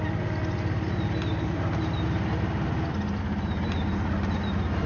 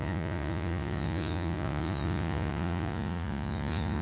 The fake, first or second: second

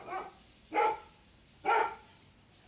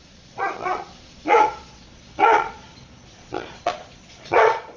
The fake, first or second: second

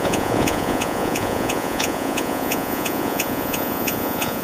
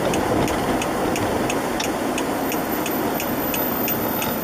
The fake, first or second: first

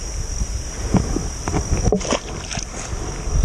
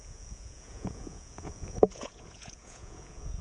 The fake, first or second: second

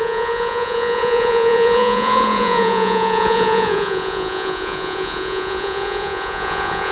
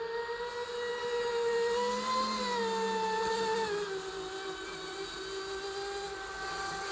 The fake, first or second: first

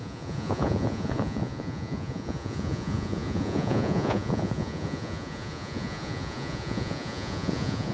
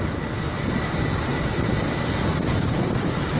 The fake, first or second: first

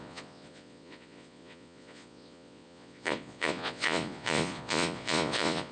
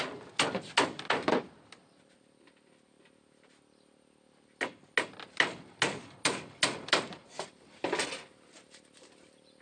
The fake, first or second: first